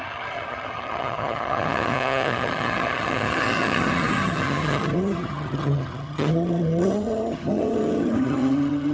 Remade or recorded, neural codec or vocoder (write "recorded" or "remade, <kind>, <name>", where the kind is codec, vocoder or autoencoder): remade, vocoder, HiFi-GAN